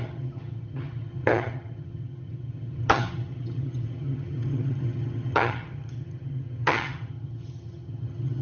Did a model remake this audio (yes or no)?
yes